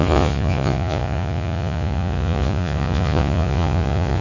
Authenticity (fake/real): fake